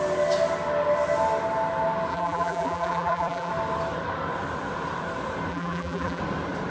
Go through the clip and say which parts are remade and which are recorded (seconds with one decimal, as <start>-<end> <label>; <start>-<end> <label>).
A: 0.0-2.1 recorded; 2.1-3.5 remade; 3.5-5.5 recorded; 5.5-6.2 remade; 6.2-6.7 recorded